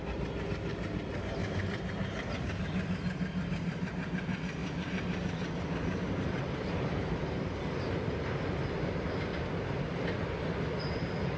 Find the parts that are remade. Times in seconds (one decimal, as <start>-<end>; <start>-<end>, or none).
1.1-2.6; 4.6-8.9